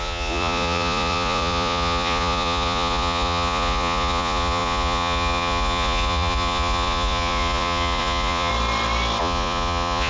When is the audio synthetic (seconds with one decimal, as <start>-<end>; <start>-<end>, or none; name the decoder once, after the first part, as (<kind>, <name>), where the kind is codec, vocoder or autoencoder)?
0.0-8.5 (vocoder, Vocos); 9.2-10.1